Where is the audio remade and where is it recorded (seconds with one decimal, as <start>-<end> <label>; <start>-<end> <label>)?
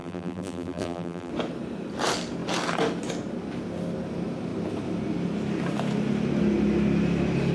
0.0-1.3 remade; 1.3-7.5 recorded